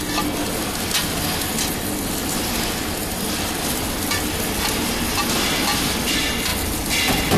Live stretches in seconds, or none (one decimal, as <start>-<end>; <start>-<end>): 0.0-7.4

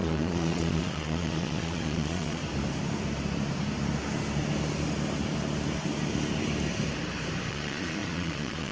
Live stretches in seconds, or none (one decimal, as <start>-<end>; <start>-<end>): 2.4-7.5